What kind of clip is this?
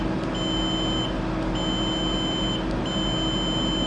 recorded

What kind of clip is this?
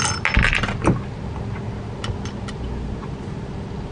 recorded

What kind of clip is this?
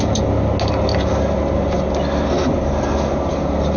recorded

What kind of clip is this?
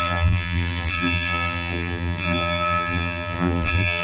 remade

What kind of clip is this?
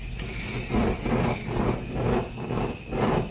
recorded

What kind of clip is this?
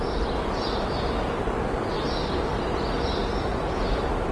recorded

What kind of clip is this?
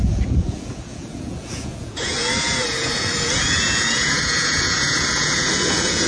remade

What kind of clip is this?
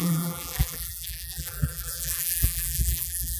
remade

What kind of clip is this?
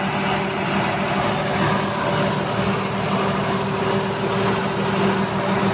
recorded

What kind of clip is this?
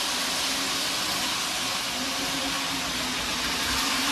recorded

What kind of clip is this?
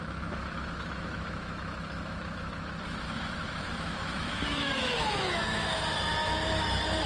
remade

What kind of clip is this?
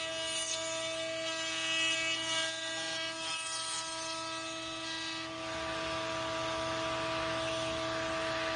recorded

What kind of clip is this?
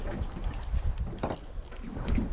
recorded